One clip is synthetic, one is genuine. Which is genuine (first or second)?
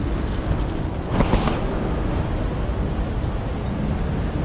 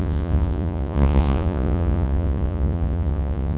first